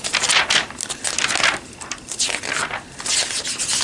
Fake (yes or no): no